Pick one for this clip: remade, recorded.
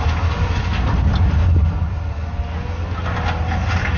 recorded